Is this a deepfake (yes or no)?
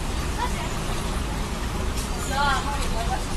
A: no